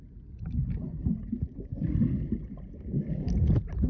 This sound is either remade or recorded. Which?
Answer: recorded